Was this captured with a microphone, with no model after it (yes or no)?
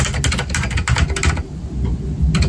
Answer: yes